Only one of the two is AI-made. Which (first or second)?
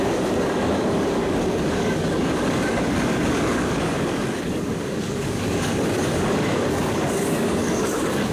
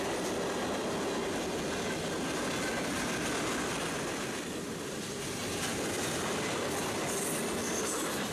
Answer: first